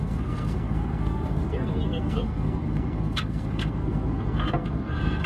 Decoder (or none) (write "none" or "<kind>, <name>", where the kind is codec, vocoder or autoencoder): codec, SNAC